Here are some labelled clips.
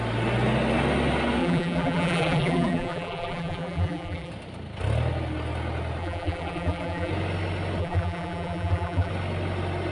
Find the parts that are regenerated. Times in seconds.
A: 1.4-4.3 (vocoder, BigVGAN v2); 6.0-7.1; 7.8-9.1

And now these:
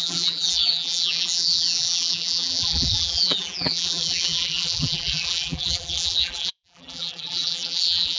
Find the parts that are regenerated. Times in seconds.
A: 0.0-8.2 (vocoder, BigVGAN v2)